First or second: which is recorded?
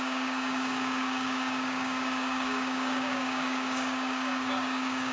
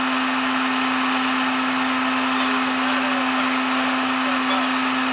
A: second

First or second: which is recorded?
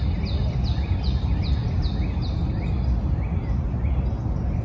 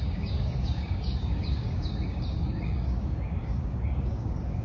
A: first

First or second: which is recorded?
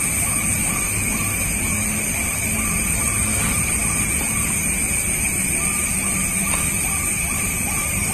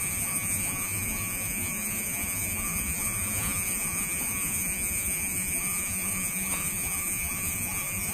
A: first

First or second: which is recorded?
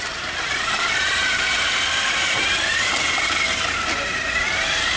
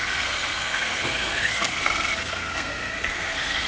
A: first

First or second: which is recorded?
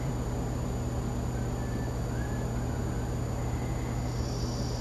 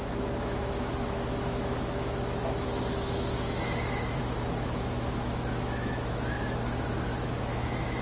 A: first